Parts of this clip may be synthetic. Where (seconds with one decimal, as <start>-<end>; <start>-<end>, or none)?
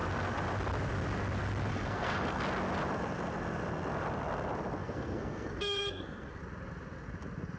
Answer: 1.7-2.4; 4.8-6.4